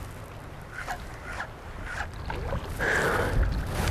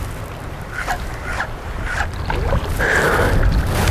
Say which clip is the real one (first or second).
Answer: first